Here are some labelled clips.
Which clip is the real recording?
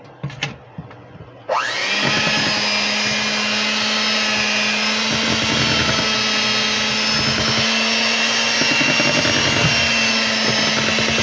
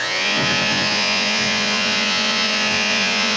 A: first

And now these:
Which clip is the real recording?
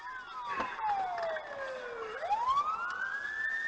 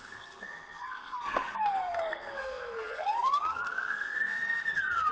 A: first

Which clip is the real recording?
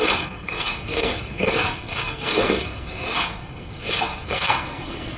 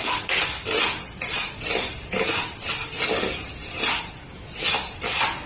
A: second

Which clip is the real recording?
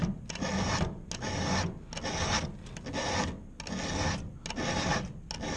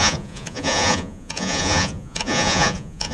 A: first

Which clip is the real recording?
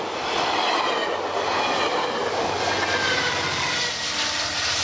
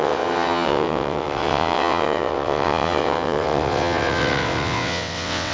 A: first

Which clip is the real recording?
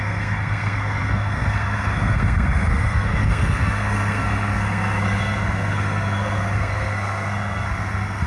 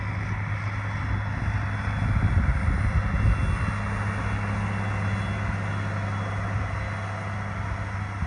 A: second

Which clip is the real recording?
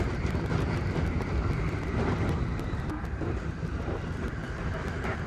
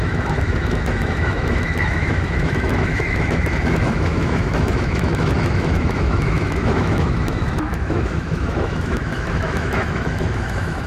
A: first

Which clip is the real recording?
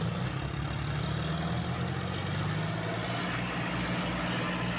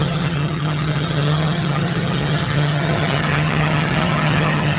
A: first